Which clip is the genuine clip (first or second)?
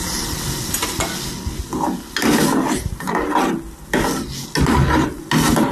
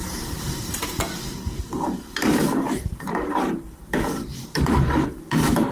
first